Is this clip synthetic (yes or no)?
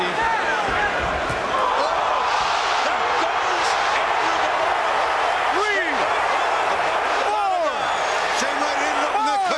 no